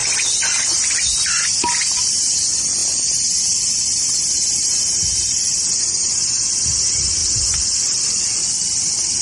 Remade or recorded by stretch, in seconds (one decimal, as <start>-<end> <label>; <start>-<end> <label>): 0.0-9.2 recorded